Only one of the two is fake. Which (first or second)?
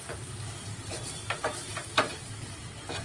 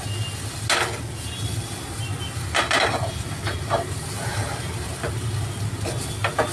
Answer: first